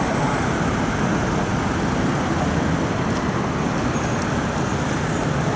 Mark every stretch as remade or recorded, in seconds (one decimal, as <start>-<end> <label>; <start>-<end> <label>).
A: 0.0-5.6 recorded